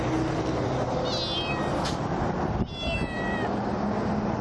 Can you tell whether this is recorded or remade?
recorded